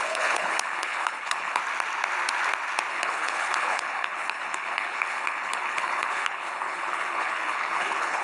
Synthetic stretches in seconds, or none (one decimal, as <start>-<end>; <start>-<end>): 0.0-1.6; 2.9-8.2